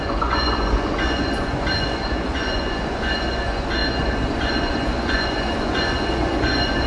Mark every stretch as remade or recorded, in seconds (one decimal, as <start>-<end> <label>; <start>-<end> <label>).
0.0-6.9 remade